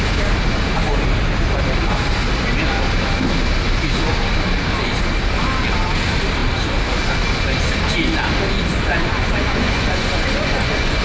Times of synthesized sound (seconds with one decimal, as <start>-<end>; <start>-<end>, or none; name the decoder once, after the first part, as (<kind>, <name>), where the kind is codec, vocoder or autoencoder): 8.7-11.0 (vocoder, Vocos)